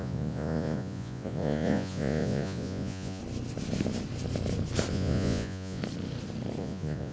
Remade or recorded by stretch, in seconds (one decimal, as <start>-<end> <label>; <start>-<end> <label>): 0.0-3.2 remade; 3.2-4.9 recorded; 4.9-5.8 remade; 5.8-6.6 recorded; 6.6-7.1 remade